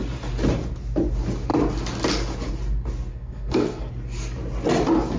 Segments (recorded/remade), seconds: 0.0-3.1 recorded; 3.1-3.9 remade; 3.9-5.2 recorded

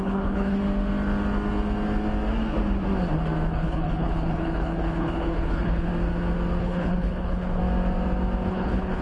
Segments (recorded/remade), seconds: 0.0-0.6 remade; 0.6-3.5 recorded; 3.5-5.9 remade; 5.9-6.6 recorded; 6.6-7.6 remade; 7.6-8.5 recorded; 8.5-9.0 remade

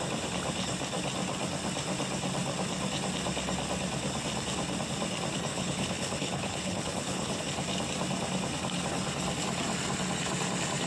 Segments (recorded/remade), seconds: 0.0-5.5 recorded; 5.5-7.4 remade; 7.4-10.9 recorded